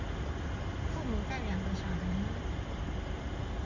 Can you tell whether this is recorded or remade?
recorded